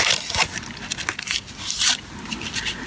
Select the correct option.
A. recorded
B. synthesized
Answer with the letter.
A